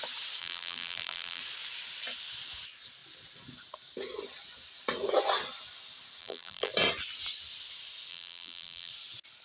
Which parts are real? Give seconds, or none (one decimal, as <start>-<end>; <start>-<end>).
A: 0.0-0.4; 1.4-6.2; 6.7-8.1; 8.9-9.4